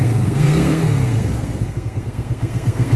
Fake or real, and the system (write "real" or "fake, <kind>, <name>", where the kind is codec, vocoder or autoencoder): fake, codec, SNAC